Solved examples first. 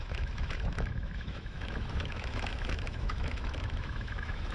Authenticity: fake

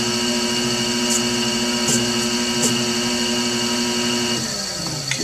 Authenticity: real